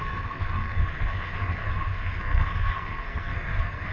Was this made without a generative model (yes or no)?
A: no